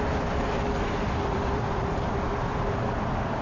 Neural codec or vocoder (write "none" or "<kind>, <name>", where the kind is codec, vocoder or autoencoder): vocoder, BigVGAN v2